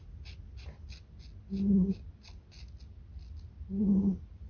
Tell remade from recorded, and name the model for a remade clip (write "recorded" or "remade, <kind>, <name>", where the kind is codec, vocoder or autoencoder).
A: recorded